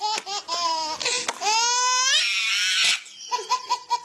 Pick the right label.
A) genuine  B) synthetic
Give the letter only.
A